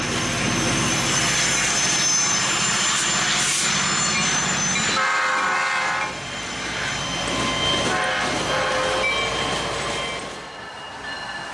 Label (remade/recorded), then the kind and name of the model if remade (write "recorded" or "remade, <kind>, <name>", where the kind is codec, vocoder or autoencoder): recorded